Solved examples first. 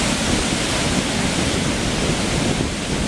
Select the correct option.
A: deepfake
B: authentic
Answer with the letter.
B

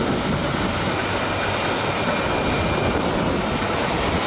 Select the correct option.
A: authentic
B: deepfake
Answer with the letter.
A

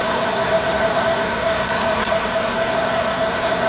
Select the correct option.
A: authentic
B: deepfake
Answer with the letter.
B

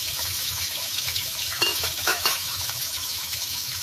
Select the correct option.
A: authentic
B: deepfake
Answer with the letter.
B